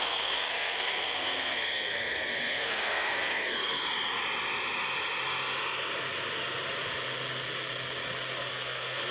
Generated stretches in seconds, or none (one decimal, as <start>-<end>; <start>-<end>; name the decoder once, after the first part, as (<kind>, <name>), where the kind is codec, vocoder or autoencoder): 0.0-3.8 (codec, SNAC); 8.5-9.1